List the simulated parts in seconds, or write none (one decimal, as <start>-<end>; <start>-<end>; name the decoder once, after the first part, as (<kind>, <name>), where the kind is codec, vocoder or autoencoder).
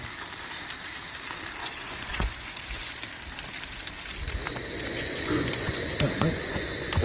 1.6-3.0 (vocoder, Vocos); 4.5-7.0